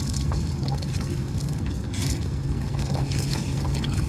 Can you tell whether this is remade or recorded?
remade